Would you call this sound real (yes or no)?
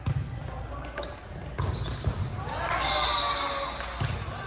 yes